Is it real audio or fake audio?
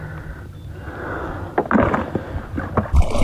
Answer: real